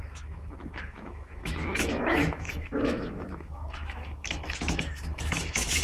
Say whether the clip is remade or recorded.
remade